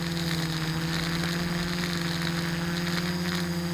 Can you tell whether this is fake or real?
real